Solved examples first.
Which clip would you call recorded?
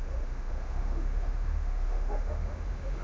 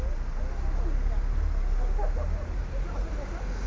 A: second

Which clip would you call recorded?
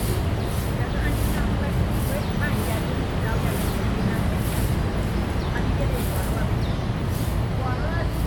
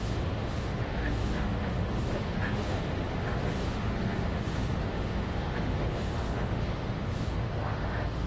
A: first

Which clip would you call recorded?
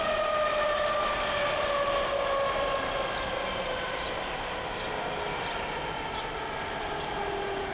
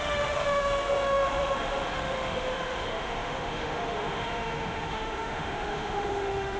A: first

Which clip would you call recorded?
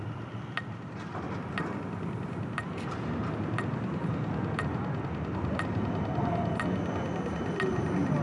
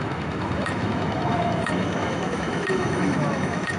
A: first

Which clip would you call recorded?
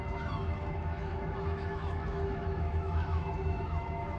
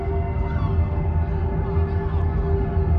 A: second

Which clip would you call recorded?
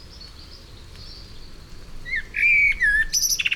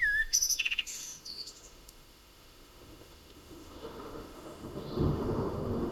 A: first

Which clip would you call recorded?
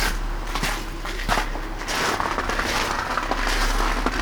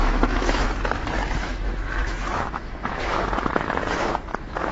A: first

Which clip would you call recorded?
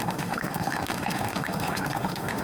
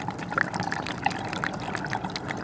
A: second